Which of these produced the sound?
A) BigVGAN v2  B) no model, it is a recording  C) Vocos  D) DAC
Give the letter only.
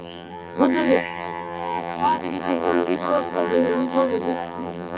A